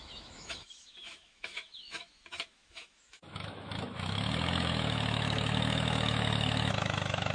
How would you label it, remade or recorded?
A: remade